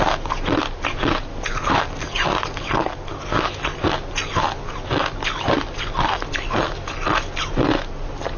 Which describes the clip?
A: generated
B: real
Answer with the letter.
B